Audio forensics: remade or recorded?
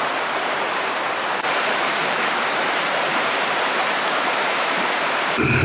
remade